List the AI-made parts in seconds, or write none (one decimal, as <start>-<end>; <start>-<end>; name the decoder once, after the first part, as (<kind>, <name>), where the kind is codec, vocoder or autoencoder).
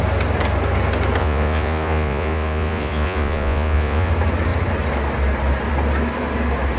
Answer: 1.2-4.1 (vocoder, Vocos)